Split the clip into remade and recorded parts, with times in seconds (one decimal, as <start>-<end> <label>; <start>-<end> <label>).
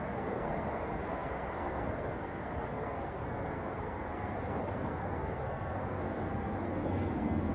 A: 0.0-7.5 remade